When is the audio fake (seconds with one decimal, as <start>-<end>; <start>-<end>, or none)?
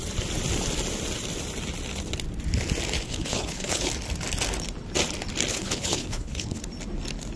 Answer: 3.1-3.9; 5.5-6.6